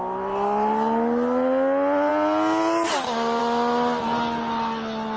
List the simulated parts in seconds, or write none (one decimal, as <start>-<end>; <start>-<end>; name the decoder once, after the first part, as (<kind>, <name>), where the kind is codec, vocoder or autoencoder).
none